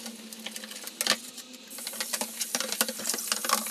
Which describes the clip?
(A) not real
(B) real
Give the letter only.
B